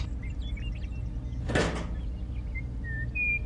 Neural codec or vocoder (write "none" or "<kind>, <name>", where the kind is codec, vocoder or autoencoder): none